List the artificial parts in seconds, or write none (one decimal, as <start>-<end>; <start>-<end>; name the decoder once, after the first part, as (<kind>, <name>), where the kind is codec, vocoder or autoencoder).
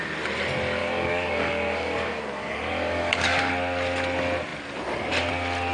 0.8-3.5 (codec, DAC)